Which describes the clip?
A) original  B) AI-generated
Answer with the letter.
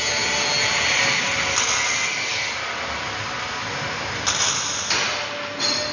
A